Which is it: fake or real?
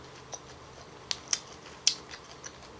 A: real